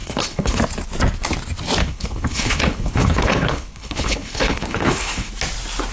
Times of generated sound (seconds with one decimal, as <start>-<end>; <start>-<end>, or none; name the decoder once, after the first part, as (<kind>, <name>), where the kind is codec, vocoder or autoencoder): 0.0-0.6 (codec, HILCodec); 1.8-5.3

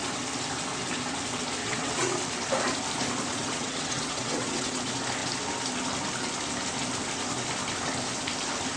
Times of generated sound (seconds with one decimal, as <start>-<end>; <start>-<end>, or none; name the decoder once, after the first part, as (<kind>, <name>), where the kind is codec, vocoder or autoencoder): 1.6-2.2 (vocoder, WaveNeXt); 3.3-4.8

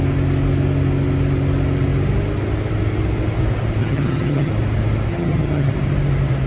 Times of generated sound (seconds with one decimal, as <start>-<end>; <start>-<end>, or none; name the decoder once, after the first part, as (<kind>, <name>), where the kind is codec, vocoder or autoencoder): 3.8-4.5 (vocoder, HiFi-GAN); 5.1-5.7

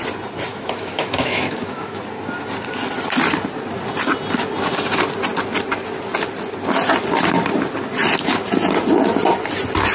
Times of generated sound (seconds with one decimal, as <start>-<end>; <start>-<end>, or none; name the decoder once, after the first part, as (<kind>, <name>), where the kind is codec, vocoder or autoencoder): 0.5-2.0 (autoencoder, DAC-VAE)

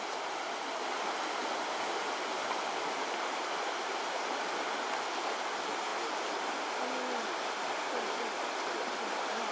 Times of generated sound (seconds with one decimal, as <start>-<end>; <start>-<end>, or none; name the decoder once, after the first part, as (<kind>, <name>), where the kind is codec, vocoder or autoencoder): none

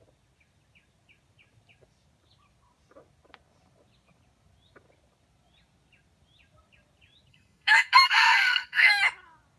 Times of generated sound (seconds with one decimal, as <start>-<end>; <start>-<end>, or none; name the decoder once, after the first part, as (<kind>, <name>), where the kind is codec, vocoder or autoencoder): 7.3-9.0 (codec, SNAC)